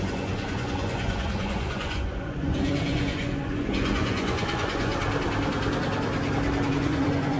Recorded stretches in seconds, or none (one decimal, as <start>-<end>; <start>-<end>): 4.9-6.7